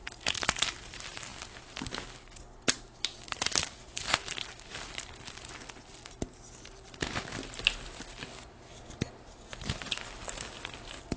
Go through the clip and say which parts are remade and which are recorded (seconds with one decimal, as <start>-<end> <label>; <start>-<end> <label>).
0.0-11.2 recorded